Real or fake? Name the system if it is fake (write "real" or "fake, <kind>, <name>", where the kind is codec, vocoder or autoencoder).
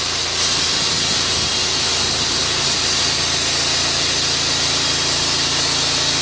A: real